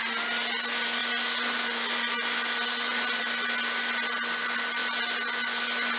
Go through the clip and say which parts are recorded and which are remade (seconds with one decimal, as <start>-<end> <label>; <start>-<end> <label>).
0.0-6.0 recorded